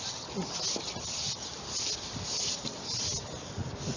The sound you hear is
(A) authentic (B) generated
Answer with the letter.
A